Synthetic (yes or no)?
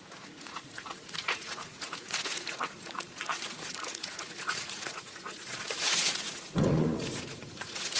yes